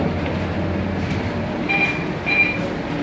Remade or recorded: recorded